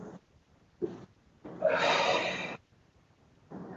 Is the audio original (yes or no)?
yes